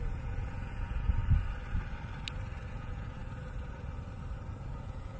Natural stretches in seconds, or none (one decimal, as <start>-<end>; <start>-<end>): 1.2-2.7; 3.2-4.7